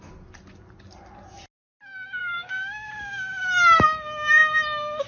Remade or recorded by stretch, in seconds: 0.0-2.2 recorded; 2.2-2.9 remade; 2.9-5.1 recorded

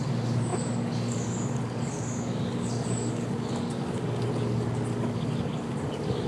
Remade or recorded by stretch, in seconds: 0.0-6.3 remade

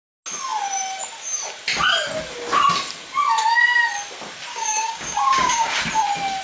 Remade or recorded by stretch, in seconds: 0.0-4.5 recorded; 4.5-5.8 remade; 5.8-6.4 recorded

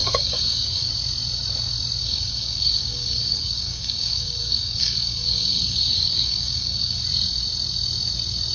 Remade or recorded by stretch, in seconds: 0.0-0.9 remade; 0.9-2.0 recorded; 2.0-7.0 remade; 7.0-8.5 recorded